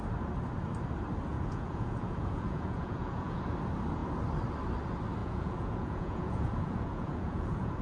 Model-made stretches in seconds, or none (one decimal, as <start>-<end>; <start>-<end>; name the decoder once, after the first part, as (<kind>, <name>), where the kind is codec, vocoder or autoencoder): 1.3-3.4 (vocoder, Vocos); 5.2-7.8